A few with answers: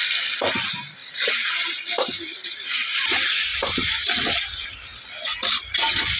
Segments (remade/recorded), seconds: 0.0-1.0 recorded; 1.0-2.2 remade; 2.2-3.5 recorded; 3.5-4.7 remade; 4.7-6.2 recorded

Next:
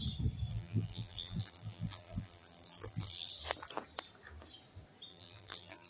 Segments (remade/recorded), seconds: 0.0-0.5 recorded; 0.5-3.3 remade; 3.3-5.1 recorded; 5.1-5.9 remade

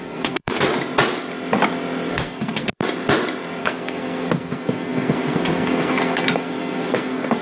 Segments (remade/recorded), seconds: 0.0-0.7 remade; 0.7-2.1 recorded; 2.1-2.7 remade; 2.7-3.6 recorded; 3.6-7.4 remade

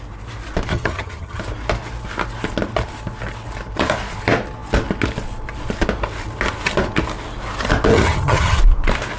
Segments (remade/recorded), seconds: 0.0-0.7 recorded; 0.7-1.4 remade; 1.4-7.9 recorded; 7.9-8.6 remade; 8.6-9.2 recorded

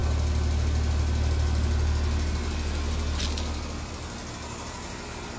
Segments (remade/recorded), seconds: 0.0-5.4 recorded

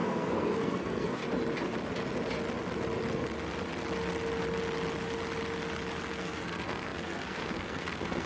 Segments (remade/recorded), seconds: 0.0-1.2 remade; 1.2-6.1 recorded; 6.1-8.3 remade

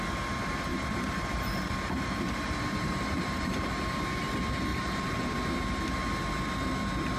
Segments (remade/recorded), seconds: 0.0-0.7 recorded; 0.7-3.7 remade; 3.7-4.7 recorded; 4.7-5.4 remade; 5.4-7.2 recorded